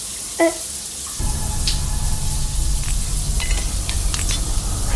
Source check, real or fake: real